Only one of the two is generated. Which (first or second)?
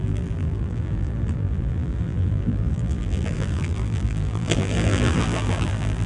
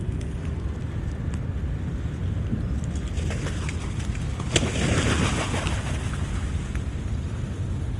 first